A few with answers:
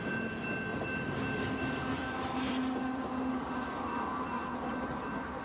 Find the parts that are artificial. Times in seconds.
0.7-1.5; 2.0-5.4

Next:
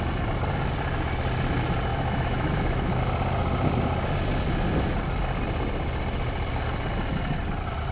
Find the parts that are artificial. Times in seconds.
1.9-3.0

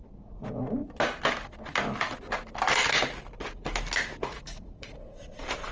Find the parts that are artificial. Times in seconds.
0.0-0.8; 4.2-5.7